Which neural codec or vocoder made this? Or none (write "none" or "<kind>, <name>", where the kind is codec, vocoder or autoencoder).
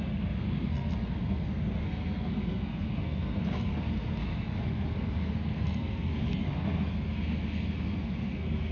codec, SNAC